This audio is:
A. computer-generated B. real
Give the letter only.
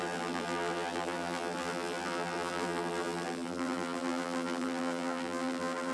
A